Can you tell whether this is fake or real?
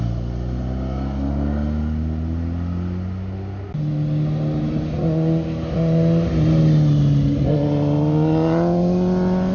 real